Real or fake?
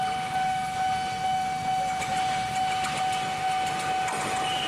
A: real